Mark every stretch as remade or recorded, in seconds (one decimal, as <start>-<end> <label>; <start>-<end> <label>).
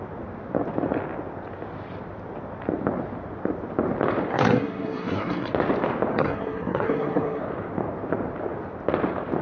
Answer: 0.0-4.3 recorded; 4.3-5.5 remade; 5.5-6.1 recorded; 6.1-7.4 remade; 7.4-9.4 recorded